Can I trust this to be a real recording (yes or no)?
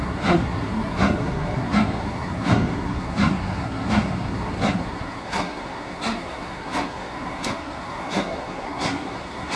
no